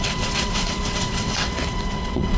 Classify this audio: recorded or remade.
remade